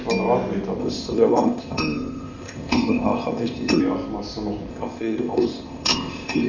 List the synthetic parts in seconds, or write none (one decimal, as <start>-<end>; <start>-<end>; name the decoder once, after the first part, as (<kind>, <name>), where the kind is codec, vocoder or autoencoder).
0.8-3.8 (codec, ZipCodec); 4.7-6.5